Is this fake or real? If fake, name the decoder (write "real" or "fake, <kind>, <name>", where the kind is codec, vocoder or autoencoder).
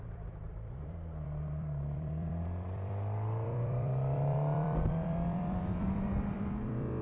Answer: fake, vocoder, BigVGAN v2